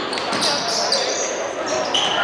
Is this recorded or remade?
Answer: recorded